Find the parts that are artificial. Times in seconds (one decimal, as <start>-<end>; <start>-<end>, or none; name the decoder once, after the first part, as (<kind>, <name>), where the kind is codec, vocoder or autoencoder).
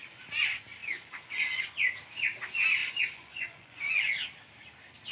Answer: 0.8-1.6 (vocoder, Vocos); 2.8-3.9